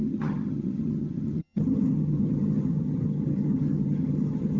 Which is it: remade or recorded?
remade